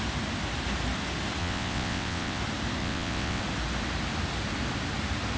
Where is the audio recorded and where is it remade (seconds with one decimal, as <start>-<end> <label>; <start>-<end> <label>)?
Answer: 0.0-1.4 recorded; 1.4-2.4 remade; 2.4-2.8 recorded; 2.8-3.4 remade; 3.4-5.4 recorded